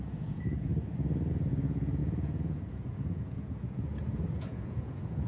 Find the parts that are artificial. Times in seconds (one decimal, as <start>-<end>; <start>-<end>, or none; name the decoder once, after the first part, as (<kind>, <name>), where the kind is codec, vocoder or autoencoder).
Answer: 0.0-0.7 (vocoder, Vocos); 1.3-5.3